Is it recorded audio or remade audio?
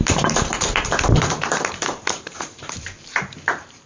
remade